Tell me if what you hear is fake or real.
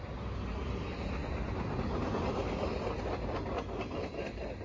real